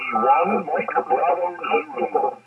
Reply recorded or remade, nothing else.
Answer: recorded